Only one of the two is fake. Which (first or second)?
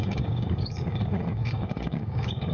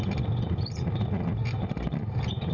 first